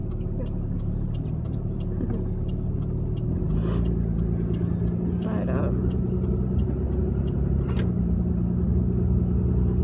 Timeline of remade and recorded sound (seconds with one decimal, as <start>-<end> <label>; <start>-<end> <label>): 0.0-9.8 recorded